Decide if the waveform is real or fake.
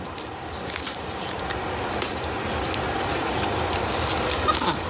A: fake